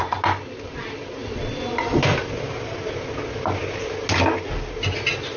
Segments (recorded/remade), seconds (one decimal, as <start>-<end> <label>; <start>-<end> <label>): 0.0-0.5 remade; 0.5-5.4 recorded